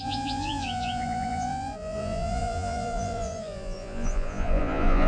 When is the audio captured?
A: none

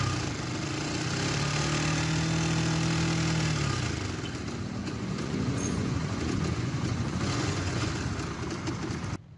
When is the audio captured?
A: 0.0-4.8; 7.9-9.4

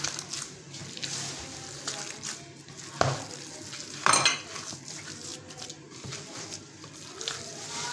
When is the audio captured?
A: 0.0-7.9

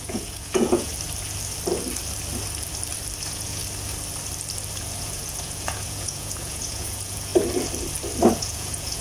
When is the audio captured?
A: 0.9-3.2; 3.6-5.0; 7.3-8.3